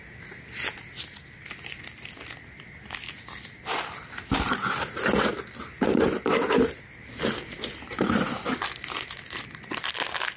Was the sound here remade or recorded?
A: recorded